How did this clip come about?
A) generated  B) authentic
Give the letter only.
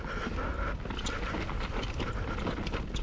B